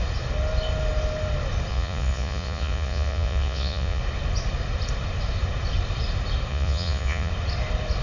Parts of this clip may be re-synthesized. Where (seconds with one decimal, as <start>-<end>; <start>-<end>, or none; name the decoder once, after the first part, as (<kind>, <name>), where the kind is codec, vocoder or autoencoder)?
1.7-4.0 (vocoder, Vocos); 6.5-7.3